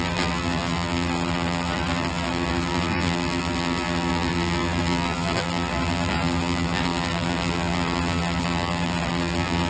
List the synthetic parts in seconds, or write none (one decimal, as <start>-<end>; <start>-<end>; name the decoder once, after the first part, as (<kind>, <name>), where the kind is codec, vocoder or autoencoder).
0.0-9.7 (vocoder, BigVGAN v2)